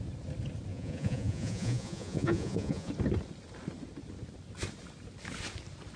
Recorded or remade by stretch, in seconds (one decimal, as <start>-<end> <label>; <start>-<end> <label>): 0.0-0.7 recorded; 0.7-2.9 remade; 2.9-6.0 recorded